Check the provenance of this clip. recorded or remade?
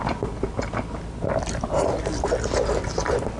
recorded